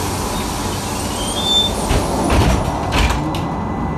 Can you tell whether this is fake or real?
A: real